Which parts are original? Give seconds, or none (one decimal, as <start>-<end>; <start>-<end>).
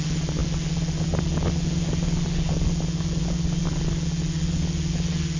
0.0-5.4